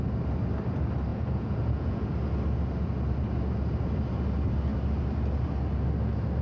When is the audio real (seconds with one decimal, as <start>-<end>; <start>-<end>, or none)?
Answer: 0.0-1.1; 2.1-6.4

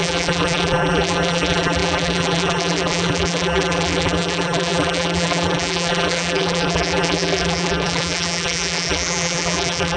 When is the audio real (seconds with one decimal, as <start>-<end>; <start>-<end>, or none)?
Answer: none